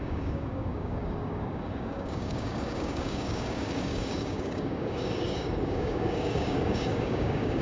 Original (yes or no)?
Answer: no